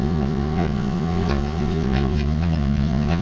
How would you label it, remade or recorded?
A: remade